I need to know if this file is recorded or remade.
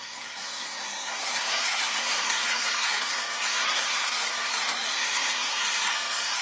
remade